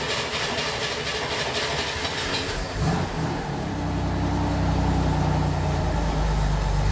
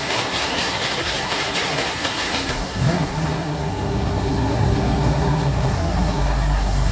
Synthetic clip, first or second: second